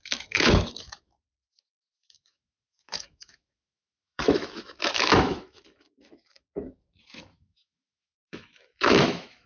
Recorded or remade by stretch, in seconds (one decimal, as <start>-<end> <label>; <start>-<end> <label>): 0.0-9.5 remade